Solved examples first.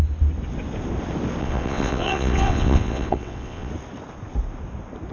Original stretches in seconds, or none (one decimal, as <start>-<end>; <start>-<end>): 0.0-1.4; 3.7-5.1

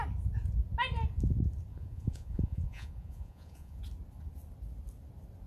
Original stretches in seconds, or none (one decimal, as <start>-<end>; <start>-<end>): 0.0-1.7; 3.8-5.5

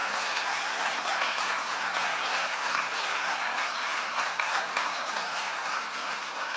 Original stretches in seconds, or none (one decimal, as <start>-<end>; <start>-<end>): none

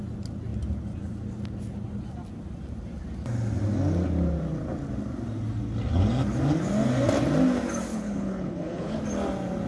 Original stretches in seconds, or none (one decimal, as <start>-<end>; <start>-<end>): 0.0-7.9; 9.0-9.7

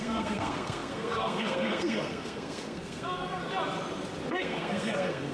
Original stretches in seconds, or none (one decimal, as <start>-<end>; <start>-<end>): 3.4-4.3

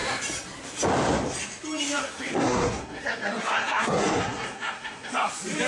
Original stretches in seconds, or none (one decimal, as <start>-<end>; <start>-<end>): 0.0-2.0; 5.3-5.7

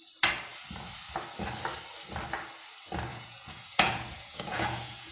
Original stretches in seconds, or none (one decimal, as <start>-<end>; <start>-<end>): 0.0-3.1

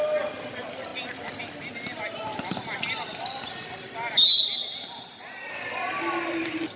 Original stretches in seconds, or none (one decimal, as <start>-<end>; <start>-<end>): 0.0-6.8